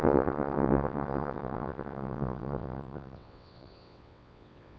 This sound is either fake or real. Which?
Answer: fake